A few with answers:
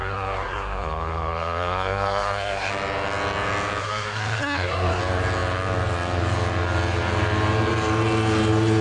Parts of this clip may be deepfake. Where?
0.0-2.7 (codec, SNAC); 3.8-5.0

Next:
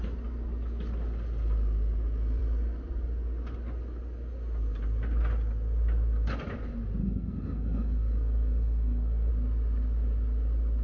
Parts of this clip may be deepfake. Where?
7.0-9.3 (codec, SNAC)

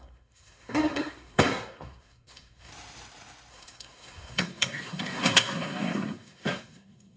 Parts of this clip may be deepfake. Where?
0.0-2.7 (codec, SNAC); 3.5-7.2